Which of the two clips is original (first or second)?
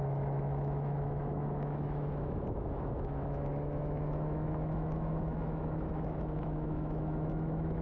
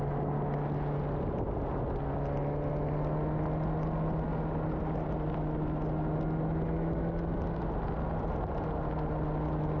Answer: second